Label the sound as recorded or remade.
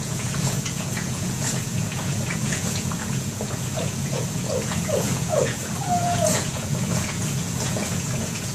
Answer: remade